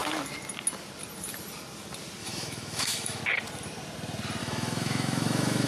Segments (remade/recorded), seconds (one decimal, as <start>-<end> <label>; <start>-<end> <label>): 0.0-2.2 recorded; 2.2-3.2 remade; 3.2-4.4 recorded; 4.4-5.7 remade